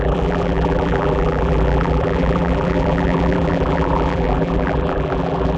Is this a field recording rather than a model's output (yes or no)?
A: no